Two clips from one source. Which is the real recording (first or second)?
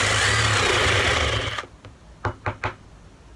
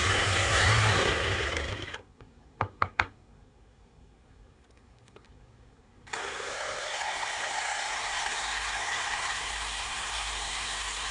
first